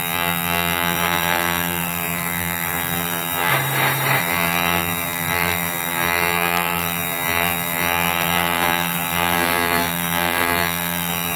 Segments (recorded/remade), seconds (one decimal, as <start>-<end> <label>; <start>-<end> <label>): 0.0-3.5 remade; 3.5-4.2 recorded; 4.2-11.4 remade